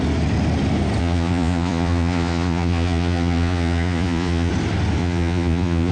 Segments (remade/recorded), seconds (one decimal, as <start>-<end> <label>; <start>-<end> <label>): 0.0-1.0 recorded; 1.0-4.5 remade; 4.5-5.0 recorded; 5.0-5.9 remade